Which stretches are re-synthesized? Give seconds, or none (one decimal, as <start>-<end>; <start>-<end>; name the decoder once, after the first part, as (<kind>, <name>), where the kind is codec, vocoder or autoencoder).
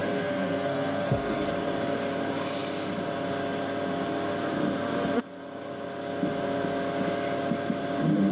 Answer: 0.0-1.5 (codec, SNAC)